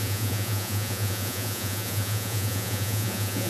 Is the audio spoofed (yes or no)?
yes